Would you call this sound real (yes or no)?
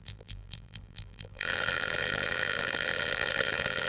no